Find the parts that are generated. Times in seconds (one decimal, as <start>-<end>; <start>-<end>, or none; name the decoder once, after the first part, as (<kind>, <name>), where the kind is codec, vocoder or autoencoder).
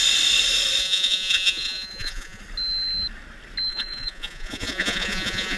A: 0.8-2.4 (vocoder, Vocos); 3.7-5.6